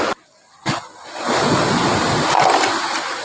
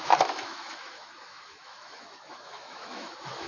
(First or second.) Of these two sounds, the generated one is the second